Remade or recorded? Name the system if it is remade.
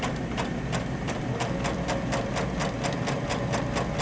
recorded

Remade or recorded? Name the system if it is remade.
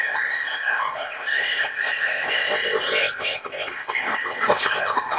remade, codec, ZipCodec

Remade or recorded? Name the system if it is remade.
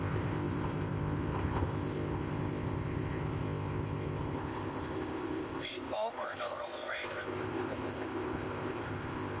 remade, codec, ZipCodec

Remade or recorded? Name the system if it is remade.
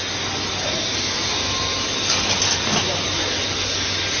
recorded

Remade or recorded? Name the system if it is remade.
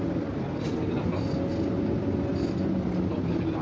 recorded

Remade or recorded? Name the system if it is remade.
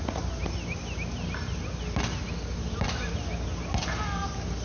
recorded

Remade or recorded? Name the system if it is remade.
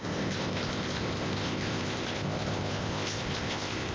remade, codec, ZipCodec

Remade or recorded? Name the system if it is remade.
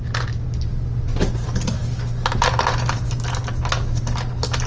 recorded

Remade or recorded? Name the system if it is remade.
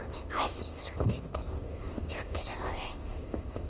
remade, codec, ZipCodec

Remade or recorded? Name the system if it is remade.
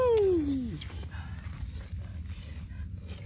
recorded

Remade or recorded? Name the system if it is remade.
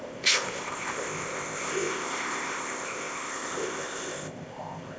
remade, codec, ZipCodec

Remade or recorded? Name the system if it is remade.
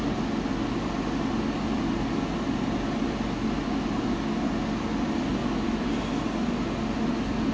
recorded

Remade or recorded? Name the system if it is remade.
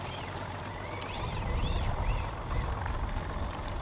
recorded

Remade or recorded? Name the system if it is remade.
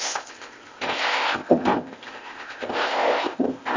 remade, codec, ZipCodec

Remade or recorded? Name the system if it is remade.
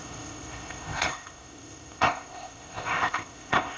remade, codec, ZipCodec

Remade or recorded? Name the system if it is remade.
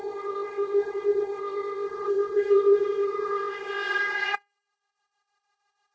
remade, codec, ZipCodec